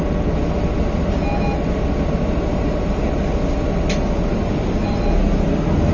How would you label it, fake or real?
real